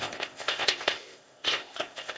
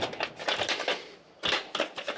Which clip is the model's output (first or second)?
first